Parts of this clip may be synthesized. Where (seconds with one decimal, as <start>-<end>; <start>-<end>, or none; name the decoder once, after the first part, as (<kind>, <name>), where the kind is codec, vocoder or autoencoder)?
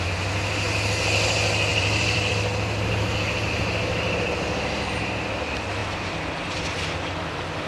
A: 1.7-2.3 (vocoder, BigVGAN v2)